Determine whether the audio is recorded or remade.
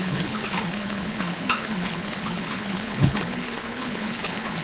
remade